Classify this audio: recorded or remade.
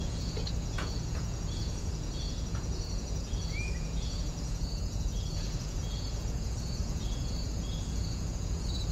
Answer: remade